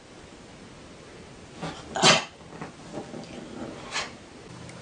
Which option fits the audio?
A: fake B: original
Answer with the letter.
B